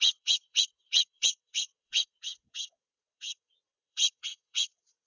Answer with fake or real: fake